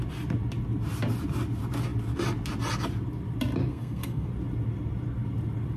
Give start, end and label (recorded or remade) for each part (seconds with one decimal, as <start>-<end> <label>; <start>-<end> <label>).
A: 0.0-3.7 recorded; 3.7-4.3 remade; 4.3-5.8 recorded